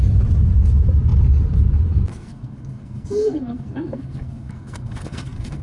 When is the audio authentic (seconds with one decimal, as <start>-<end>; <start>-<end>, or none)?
0.0-2.1

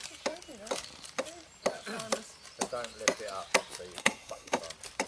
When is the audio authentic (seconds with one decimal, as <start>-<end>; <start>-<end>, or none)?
0.0-4.0; 4.6-5.1

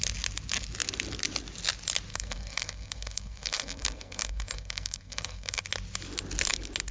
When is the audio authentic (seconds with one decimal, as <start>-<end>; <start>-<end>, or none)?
0.0-2.1; 5.6-6.9